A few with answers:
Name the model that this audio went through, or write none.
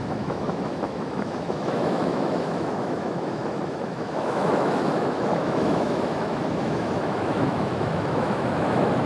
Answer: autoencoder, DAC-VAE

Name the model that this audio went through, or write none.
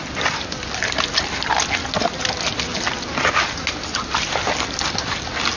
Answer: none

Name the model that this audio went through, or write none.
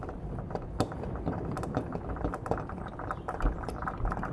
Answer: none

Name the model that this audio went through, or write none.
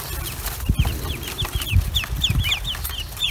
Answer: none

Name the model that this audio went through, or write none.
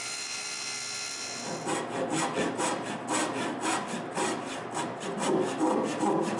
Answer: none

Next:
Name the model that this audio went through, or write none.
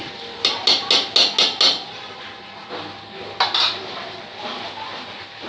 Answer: none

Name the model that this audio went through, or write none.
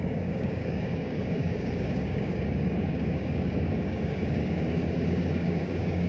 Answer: codec, DAC